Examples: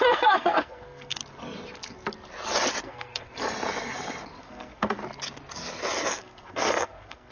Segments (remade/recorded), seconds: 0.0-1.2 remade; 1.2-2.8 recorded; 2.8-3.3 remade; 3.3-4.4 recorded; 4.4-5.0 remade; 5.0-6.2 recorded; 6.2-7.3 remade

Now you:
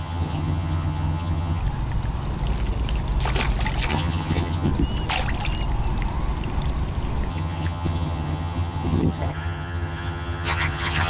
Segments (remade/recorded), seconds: 0.0-1.6 remade; 1.6-3.9 recorded; 3.9-4.7 remade; 4.7-7.3 recorded; 7.3-11.1 remade